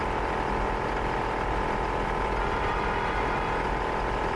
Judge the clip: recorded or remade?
recorded